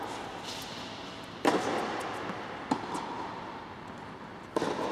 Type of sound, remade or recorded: recorded